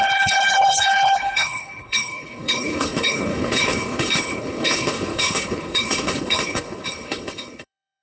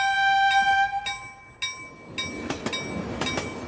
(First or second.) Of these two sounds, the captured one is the second